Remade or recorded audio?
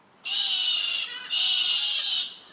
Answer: recorded